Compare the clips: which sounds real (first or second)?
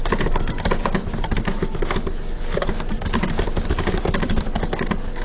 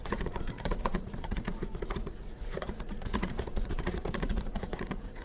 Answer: first